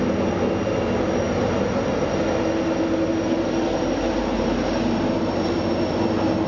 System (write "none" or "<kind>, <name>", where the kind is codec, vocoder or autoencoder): none